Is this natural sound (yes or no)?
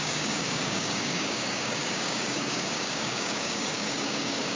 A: no